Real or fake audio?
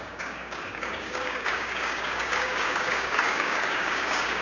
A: fake